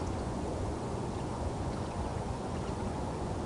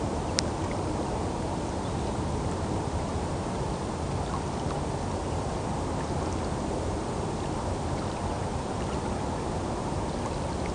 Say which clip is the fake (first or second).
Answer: first